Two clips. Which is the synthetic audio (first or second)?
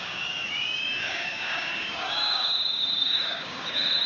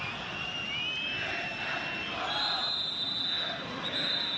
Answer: first